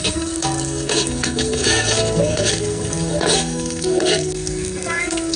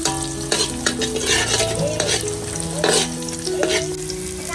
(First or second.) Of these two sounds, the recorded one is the second